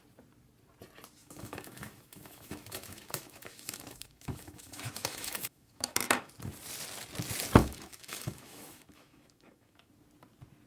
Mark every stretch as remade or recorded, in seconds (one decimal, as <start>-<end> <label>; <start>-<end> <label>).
0.0-1.2 recorded; 1.2-6.3 remade; 6.3-7.6 recorded; 7.6-9.9 remade; 9.9-10.7 recorded